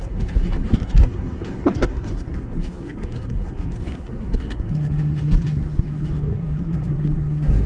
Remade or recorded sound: remade